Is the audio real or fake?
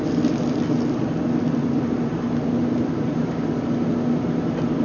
real